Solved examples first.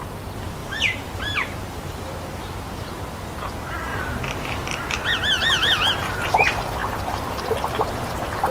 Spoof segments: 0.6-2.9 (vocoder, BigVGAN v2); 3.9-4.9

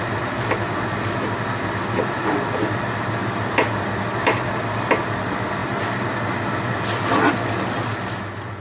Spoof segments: none

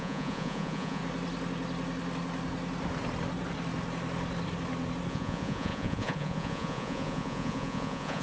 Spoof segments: 0.0-1.0 (vocoder, Vocos); 5.1-8.2

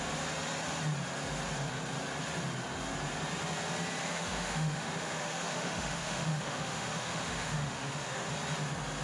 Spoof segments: 4.0-8.3 (autoencoder, DAC-VAE)

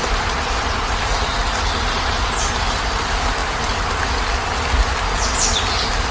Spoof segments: none